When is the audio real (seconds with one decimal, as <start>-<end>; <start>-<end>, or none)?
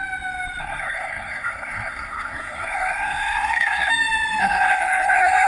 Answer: 0.0-0.6; 3.9-4.4